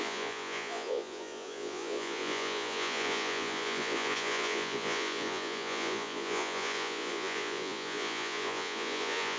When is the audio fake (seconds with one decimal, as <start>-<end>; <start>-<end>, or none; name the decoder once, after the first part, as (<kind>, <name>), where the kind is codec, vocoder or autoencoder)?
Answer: 0.0-9.4 (vocoder, Vocos)